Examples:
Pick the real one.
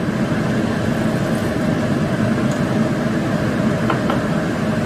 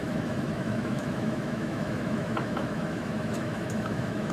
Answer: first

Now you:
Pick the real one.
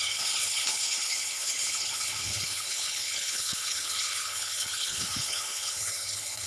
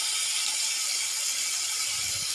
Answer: second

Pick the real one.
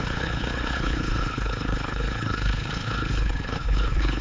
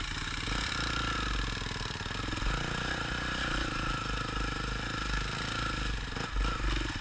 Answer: second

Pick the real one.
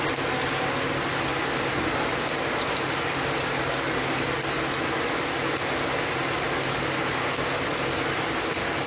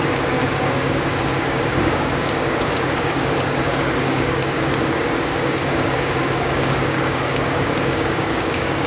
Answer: first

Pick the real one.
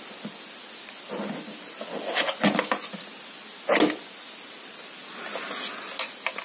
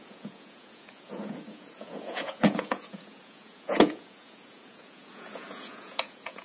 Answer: first